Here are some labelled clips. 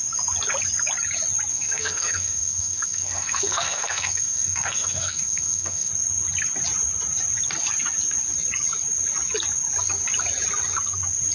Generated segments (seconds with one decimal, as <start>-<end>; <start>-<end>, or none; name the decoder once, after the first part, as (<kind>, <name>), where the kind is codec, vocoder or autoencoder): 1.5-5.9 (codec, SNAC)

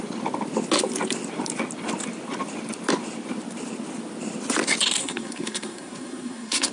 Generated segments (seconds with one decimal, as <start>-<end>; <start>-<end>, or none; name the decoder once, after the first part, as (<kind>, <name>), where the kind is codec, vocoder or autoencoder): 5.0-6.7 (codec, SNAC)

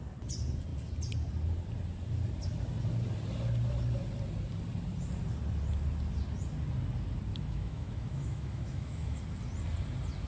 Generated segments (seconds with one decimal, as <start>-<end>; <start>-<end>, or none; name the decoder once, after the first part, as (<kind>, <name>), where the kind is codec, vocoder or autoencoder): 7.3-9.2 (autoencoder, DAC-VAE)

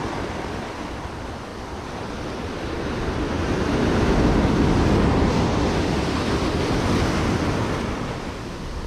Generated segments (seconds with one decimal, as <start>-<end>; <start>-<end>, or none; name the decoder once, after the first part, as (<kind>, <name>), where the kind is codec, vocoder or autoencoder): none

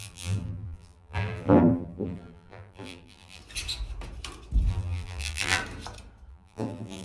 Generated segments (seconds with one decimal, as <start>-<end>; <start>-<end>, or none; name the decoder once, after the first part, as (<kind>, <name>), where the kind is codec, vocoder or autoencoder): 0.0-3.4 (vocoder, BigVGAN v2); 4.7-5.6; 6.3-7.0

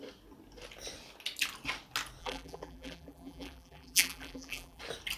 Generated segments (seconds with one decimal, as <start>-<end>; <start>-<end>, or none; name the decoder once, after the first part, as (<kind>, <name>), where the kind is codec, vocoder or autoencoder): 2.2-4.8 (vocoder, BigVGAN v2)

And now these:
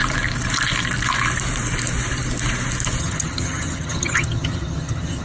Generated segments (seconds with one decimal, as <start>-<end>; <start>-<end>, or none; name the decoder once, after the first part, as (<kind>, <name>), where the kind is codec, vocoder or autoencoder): 3.0-5.2 (vocoder, HiFi-GAN)